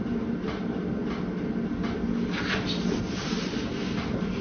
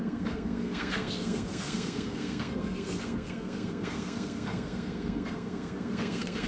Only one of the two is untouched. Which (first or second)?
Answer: first